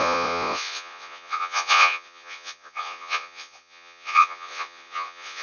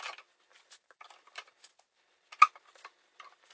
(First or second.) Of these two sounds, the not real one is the first